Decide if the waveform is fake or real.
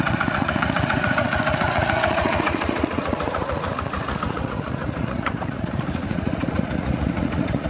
fake